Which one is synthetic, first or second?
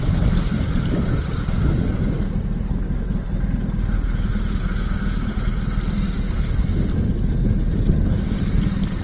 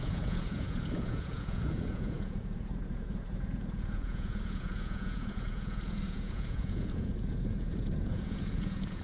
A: second